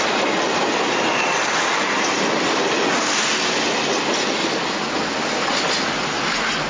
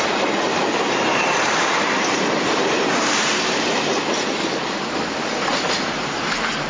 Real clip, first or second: first